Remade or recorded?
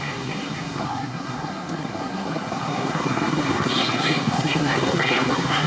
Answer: remade